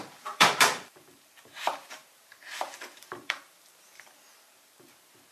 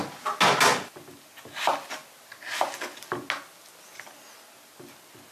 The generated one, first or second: first